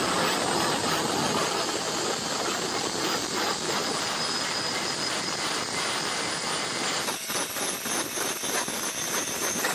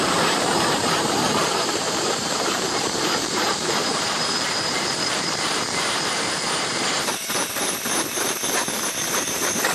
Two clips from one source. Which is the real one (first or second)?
first